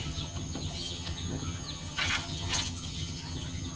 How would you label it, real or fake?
fake